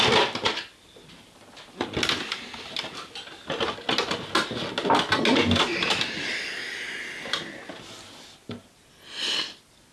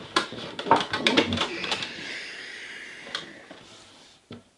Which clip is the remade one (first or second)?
second